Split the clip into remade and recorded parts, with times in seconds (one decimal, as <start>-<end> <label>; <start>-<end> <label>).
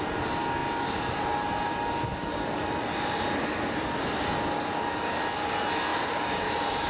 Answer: 0.0-5.9 recorded; 5.9-6.9 remade